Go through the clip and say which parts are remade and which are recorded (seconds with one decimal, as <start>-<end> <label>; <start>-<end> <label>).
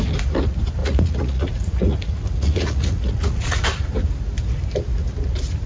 0.0-0.8 recorded; 0.8-3.6 remade; 3.6-5.7 recorded